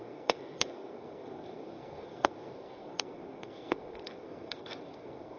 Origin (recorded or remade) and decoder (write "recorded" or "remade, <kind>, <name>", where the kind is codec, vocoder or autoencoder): remade, codec, SNAC